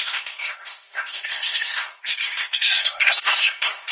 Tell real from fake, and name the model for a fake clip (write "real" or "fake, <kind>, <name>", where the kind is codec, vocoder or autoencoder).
fake, codec, SNAC